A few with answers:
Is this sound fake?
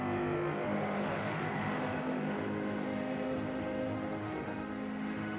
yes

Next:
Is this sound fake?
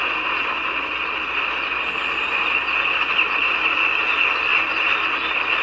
no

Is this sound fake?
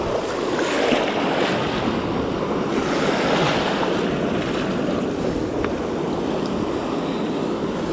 no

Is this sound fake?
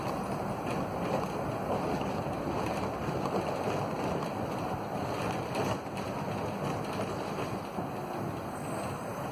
no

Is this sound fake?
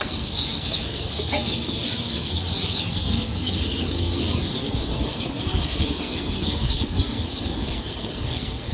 yes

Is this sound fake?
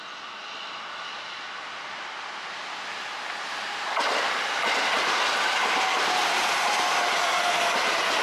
no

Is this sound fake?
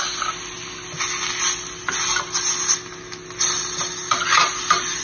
no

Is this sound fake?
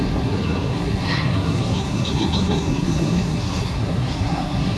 yes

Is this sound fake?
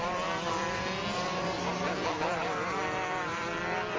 no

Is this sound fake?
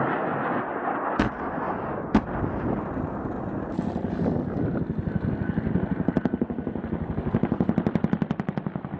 no